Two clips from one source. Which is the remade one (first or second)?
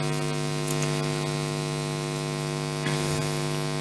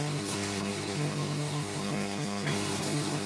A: second